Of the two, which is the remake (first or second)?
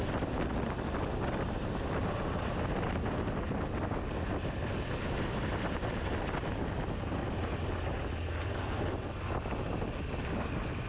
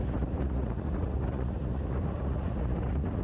second